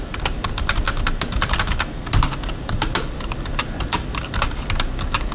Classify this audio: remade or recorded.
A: recorded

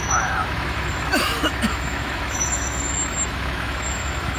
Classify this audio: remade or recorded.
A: remade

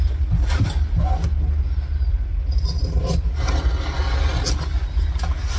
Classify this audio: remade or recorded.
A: recorded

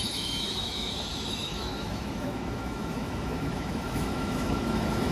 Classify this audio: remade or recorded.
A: remade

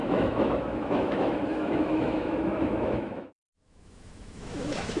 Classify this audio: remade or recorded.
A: remade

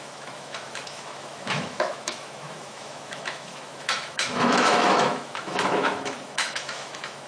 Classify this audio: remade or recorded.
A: remade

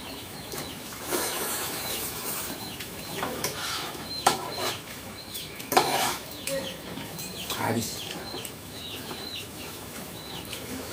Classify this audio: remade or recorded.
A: remade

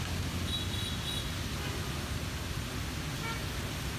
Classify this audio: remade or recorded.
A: recorded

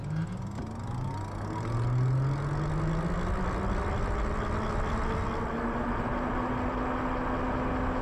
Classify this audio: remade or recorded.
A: recorded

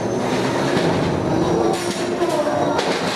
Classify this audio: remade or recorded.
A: recorded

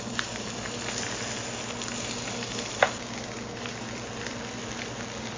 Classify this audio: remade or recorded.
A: recorded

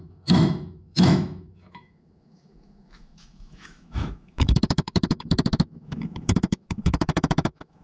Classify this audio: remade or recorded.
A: remade